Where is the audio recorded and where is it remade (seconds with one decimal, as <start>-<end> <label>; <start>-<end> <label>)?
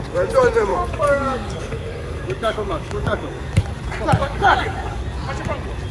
0.0-0.7 recorded; 0.7-3.6 remade; 3.6-4.2 recorded; 4.2-5.0 remade; 5.0-5.9 recorded